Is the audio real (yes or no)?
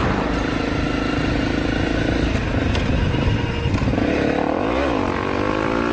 yes